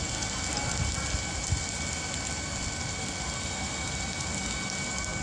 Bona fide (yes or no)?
yes